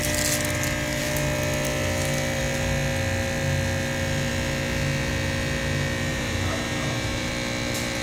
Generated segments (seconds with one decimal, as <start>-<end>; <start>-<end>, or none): 6.1-7.3